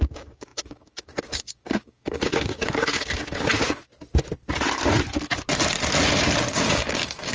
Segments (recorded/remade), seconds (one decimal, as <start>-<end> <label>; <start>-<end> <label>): 0.0-3.5 remade; 3.5-6.5 recorded; 6.5-7.3 remade